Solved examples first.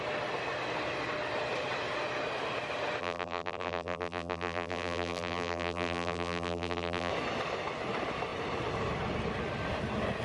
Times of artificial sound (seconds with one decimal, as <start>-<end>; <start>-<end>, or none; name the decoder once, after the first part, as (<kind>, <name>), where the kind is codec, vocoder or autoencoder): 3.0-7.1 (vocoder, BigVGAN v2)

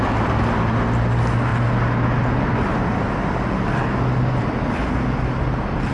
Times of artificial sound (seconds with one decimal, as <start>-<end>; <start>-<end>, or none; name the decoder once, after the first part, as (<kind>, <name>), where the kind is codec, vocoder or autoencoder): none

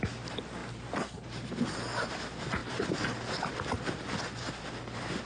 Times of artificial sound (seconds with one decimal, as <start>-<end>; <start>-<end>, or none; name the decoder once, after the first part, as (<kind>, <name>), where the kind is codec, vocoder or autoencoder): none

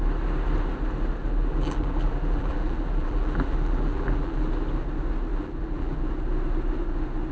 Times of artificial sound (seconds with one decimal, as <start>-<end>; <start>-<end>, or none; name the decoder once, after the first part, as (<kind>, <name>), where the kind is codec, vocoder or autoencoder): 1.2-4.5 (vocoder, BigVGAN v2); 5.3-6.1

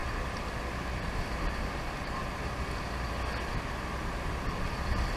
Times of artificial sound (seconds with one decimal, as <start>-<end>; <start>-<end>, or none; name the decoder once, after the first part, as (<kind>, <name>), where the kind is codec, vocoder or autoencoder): none

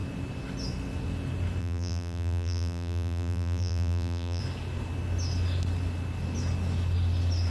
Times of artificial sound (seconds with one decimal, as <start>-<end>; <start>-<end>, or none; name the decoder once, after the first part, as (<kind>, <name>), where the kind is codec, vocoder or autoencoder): 1.6-4.4 (vocoder, BigVGAN v2)

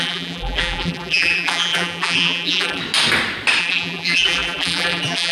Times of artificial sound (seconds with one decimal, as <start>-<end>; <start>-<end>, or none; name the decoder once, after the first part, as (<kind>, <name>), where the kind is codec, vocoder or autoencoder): 0.0-2.8 (vocoder, BigVGAN v2); 3.6-5.3